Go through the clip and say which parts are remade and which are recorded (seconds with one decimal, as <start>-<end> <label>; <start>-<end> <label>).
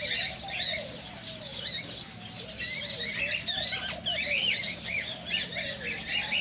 0.0-4.4 recorded; 4.4-5.0 remade; 5.0-6.4 recorded